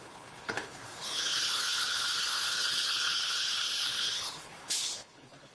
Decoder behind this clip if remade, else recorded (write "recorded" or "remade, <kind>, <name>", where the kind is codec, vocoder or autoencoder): remade, codec, HILCodec